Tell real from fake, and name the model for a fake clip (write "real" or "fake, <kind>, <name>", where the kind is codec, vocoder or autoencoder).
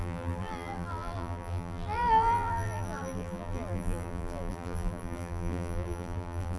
fake, vocoder, BigVGAN v2